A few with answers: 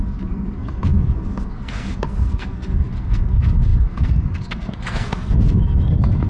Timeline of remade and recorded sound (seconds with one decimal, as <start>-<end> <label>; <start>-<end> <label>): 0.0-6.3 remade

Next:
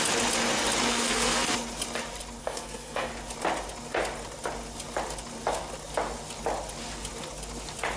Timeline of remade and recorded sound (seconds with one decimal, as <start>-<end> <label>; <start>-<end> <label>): 0.0-0.9 recorded; 0.9-1.5 remade; 1.5-2.4 recorded; 2.4-3.1 remade; 3.1-8.0 recorded

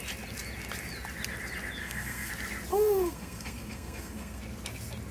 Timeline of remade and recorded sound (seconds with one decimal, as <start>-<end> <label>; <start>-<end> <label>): 0.0-1.8 recorded; 1.8-2.3 remade; 2.3-2.7 recorded; 2.7-4.4 remade; 4.4-5.1 recorded

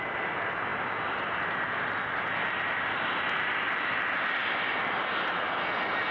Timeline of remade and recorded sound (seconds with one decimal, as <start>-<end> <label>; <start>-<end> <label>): 0.0-6.1 recorded